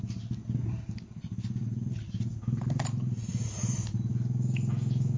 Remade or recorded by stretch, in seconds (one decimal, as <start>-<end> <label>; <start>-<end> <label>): 0.0-5.2 recorded

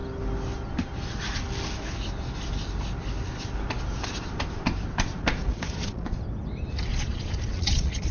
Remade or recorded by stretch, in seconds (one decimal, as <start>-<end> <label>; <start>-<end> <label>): 0.0-5.4 recorded; 5.4-6.2 remade; 6.2-6.9 recorded; 6.9-8.1 remade

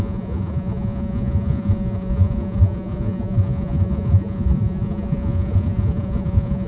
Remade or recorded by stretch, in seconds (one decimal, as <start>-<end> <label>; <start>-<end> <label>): 0.0-6.7 remade